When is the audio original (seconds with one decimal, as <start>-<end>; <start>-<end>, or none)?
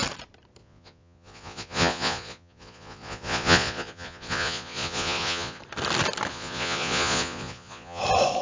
0.0-0.6; 5.6-6.3; 8.0-8.4